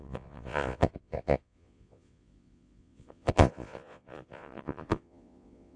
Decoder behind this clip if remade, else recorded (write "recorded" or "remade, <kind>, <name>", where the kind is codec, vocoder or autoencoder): remade, vocoder, Vocos